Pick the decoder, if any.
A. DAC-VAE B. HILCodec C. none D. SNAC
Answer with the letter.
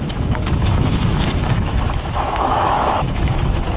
A